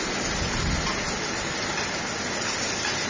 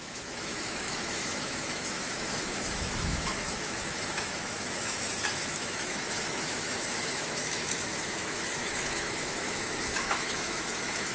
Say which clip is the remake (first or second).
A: second